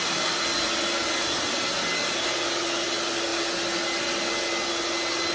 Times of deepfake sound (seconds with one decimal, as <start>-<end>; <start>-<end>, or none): none